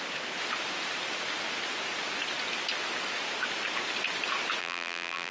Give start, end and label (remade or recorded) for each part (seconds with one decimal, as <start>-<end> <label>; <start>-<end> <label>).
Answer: 0.0-4.6 recorded; 4.6-5.3 remade